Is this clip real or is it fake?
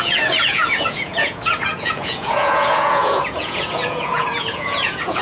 fake